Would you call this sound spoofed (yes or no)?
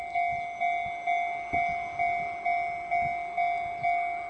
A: no